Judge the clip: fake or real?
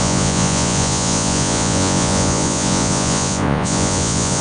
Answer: fake